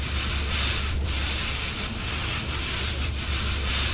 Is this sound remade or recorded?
remade